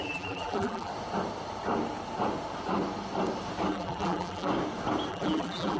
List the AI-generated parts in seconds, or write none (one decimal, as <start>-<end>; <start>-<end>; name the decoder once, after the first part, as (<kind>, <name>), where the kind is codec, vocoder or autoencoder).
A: 0.0-0.9 (vocoder, BigVGAN v2); 3.7-4.5; 5.1-5.8